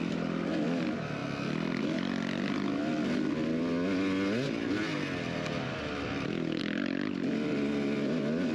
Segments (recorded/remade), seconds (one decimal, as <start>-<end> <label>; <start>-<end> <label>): 0.0-8.5 recorded